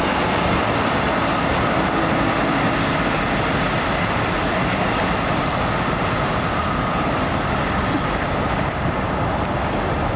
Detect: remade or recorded recorded